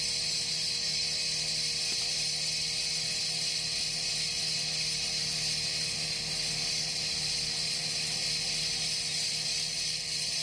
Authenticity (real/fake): real